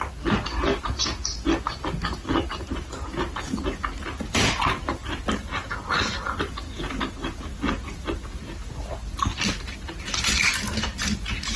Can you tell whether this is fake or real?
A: real